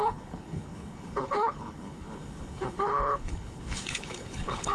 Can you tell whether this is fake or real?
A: fake